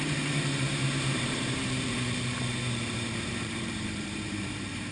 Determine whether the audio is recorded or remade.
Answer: remade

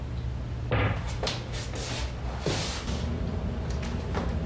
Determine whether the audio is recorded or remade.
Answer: recorded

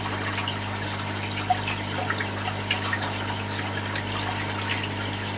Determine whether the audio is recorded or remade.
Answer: recorded